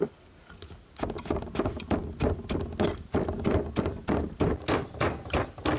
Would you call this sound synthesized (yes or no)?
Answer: no